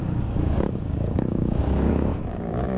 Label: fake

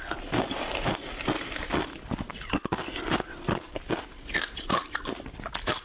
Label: real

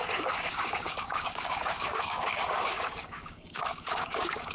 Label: fake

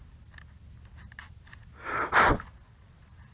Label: real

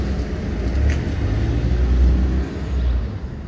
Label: real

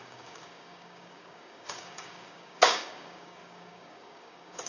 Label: fake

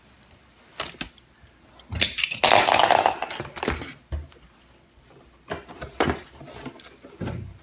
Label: real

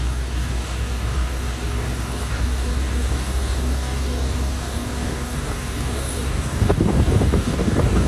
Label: fake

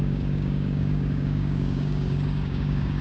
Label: fake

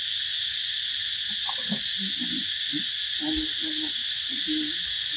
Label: real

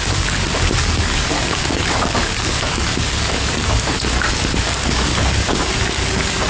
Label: fake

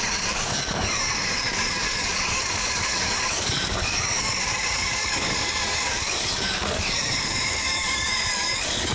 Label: fake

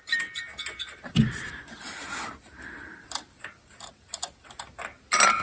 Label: real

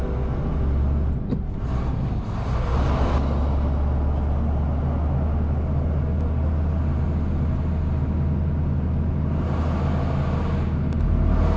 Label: real